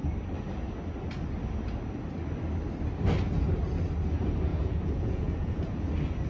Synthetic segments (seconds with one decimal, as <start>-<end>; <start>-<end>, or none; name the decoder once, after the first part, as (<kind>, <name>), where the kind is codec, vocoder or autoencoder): 4.5-5.8 (vocoder, Vocos)